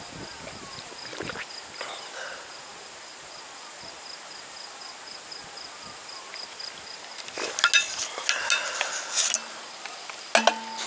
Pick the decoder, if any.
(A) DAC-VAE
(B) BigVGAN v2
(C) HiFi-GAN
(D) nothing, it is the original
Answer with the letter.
D